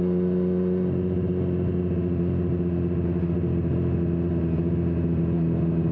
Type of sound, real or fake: real